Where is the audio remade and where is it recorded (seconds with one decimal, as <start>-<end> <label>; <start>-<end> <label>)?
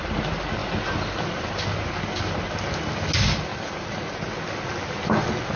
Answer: 0.0-5.6 recorded